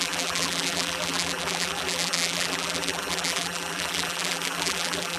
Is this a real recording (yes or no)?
no